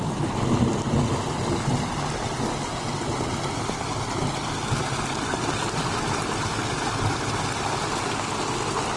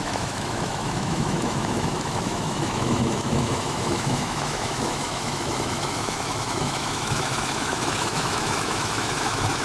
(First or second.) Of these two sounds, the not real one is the second